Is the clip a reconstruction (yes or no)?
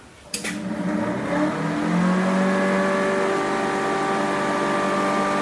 no